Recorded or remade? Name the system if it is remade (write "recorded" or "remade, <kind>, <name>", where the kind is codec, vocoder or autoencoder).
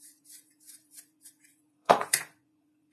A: remade, vocoder, Vocos